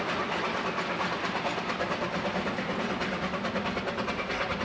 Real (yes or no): yes